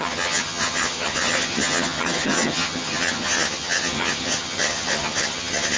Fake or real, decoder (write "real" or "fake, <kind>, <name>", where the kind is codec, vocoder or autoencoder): fake, vocoder, HiFi-GAN